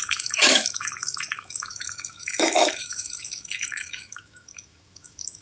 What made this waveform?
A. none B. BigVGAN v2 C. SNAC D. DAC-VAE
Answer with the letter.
D